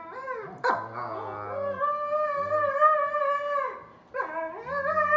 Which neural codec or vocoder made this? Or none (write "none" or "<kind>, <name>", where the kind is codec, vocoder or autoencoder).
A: none